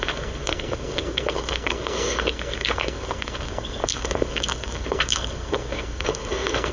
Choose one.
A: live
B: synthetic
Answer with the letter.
B